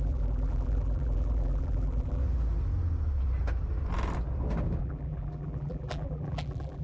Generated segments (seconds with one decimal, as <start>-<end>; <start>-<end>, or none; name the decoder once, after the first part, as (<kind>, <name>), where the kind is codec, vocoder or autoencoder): 0.0-2.2 (vocoder, BigVGAN v2); 4.8-6.8